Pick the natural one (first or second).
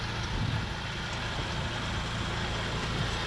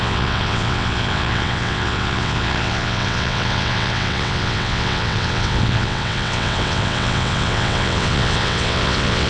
first